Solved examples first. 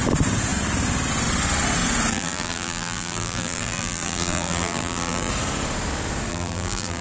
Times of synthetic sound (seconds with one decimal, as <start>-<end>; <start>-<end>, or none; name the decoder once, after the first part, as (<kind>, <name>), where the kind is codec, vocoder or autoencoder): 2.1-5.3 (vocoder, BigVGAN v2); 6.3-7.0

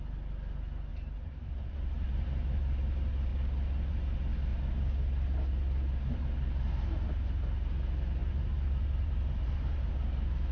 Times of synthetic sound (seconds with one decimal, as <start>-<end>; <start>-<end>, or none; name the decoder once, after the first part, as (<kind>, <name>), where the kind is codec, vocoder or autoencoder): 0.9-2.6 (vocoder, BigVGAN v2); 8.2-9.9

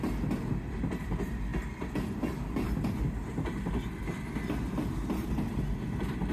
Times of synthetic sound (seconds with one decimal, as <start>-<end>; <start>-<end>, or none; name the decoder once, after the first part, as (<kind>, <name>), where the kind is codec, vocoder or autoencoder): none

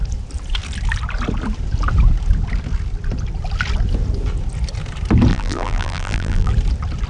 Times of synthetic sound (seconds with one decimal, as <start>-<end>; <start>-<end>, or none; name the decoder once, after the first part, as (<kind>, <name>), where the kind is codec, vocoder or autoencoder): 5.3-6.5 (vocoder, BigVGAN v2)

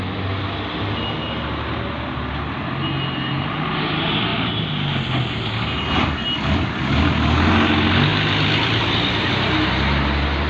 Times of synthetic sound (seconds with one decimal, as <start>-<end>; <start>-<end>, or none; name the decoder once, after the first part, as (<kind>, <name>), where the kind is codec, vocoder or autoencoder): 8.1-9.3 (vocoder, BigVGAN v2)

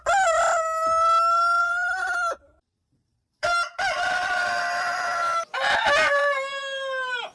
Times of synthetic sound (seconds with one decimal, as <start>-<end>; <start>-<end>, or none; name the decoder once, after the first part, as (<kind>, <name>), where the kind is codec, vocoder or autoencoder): 1.6-4.6 (vocoder, BigVGAN v2); 5.2-7.3